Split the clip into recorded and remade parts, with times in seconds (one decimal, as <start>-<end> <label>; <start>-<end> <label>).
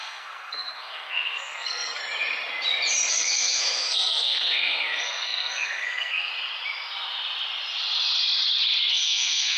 0.0-2.0 remade; 2.0-3.1 recorded; 3.1-6.3 remade; 6.3-8.9 recorded; 8.9-9.6 remade